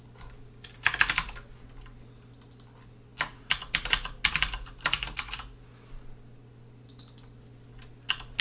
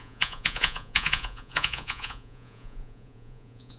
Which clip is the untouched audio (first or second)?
first